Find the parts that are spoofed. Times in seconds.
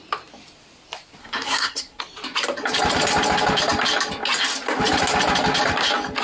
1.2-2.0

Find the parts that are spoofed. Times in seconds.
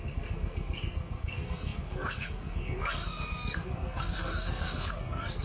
0.0-5.4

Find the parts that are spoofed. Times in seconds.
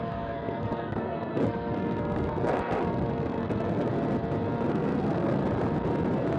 0.0-3.9; 4.7-5.4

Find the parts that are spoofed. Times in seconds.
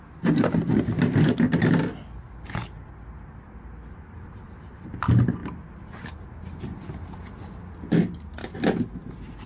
none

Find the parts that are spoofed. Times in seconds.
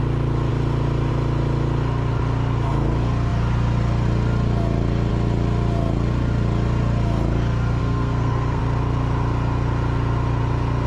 7.8-8.6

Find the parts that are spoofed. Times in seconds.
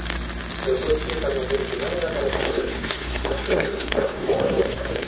2.3-5.1